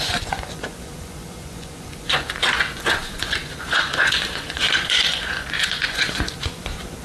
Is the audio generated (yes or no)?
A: yes